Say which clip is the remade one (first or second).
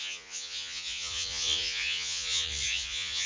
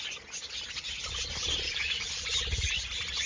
first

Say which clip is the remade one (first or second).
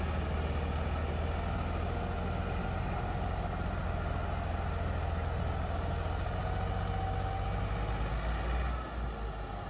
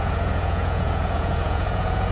second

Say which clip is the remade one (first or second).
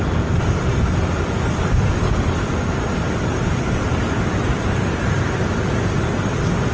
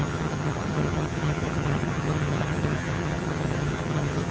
second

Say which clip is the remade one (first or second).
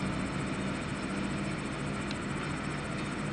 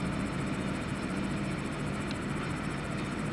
second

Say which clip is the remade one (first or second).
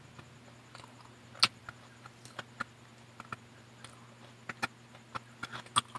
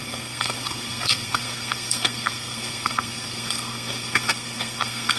second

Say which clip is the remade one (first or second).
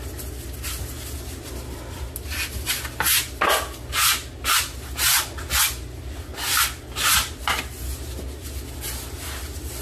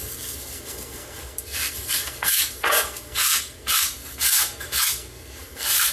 second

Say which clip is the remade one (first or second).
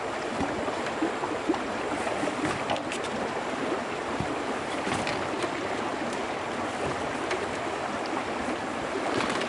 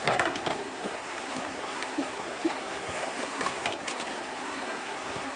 second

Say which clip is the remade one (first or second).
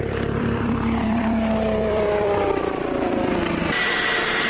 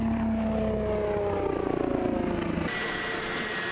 first